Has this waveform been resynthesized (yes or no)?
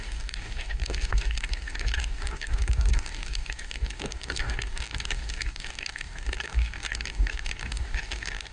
yes